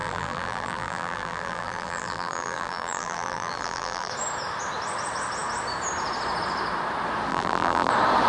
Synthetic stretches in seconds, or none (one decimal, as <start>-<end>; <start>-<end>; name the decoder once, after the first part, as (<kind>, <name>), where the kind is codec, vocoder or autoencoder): 0.0-4.1 (vocoder, BigVGAN v2); 7.3-7.9